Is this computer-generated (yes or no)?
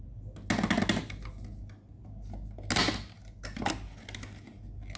no